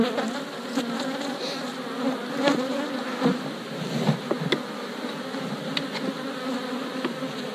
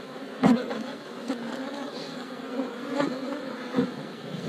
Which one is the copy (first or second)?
second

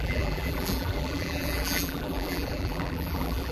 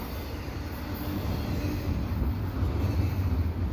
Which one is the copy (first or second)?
first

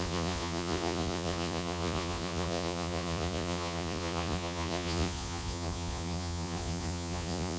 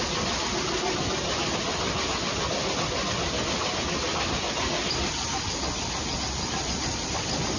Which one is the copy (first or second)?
first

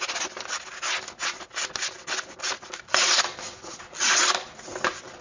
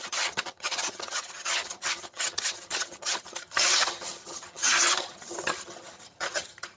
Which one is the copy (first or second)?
second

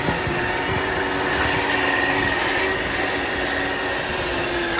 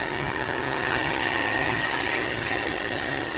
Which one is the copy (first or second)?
second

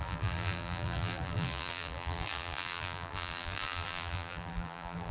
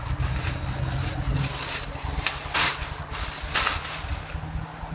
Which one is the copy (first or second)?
first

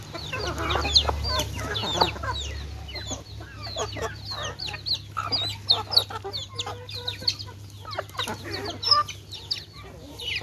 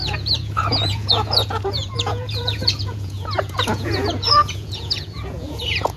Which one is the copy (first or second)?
second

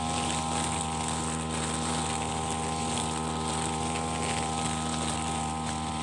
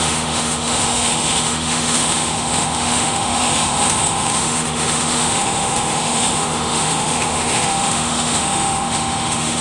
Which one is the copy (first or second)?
second